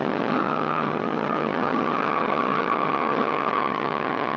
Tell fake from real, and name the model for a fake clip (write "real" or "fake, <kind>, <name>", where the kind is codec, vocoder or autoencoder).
fake, vocoder, HiFi-GAN